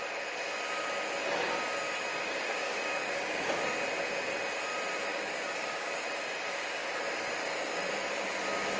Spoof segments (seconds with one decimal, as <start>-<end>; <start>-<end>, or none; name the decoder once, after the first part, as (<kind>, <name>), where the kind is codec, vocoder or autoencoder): 2.1-3.6 (codec, DAC); 5.1-6.0; 7.4-7.9